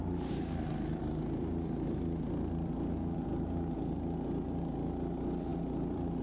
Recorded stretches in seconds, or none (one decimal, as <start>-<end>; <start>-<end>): 3.3-4.6